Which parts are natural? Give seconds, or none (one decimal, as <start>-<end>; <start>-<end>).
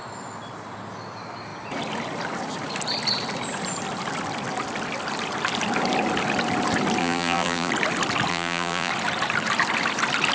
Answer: 0.0-7.0; 7.7-8.3; 8.9-10.3